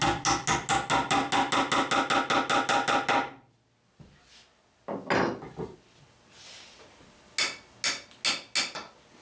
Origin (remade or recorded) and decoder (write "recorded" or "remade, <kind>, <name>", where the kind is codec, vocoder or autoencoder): recorded